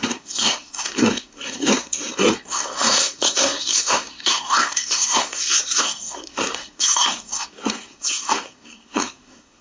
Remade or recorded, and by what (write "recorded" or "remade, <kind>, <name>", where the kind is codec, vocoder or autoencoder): remade, codec, SNAC